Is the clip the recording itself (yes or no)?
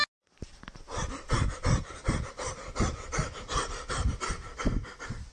yes